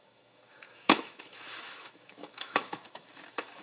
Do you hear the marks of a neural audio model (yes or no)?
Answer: yes